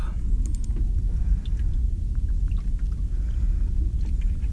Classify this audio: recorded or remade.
recorded